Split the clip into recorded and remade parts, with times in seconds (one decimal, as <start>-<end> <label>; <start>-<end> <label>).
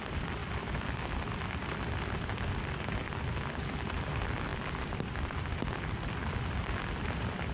0.0-7.5 recorded